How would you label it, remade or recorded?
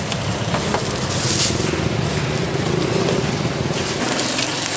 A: recorded